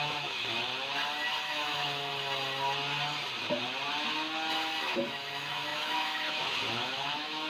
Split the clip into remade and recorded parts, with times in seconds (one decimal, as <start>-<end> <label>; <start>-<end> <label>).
0.0-0.7 remade; 0.7-1.4 recorded; 1.4-2.1 remade; 2.1-4.8 recorded; 4.8-7.5 remade